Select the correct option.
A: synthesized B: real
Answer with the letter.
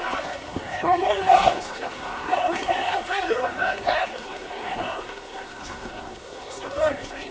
A